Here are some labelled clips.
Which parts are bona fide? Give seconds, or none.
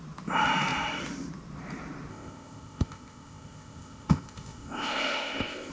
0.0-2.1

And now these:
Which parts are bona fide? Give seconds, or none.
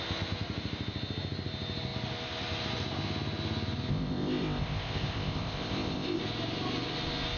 0.0-3.9; 6.2-7.4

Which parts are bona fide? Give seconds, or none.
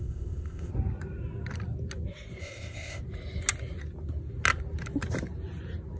0.7-2.4; 3.0-6.0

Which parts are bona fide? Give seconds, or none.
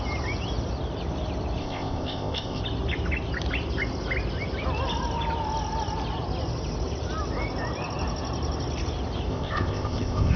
0.0-1.6; 2.6-9.3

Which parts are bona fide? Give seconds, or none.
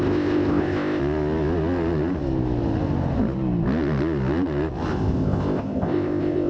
1.0-4.9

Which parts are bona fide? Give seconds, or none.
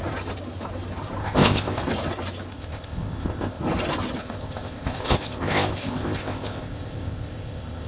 0.0-1.2; 1.8-2.5; 3.6-4.2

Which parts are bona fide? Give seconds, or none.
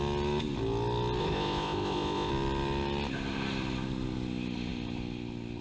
0.0-1.2; 2.3-5.6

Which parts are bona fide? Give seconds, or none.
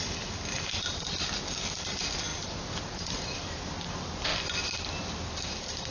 0.0-5.9